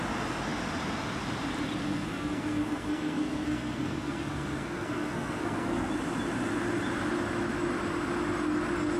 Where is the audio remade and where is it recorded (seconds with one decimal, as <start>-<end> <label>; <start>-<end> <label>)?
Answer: 0.0-1.8 recorded; 1.8-5.9 remade; 5.9-9.0 recorded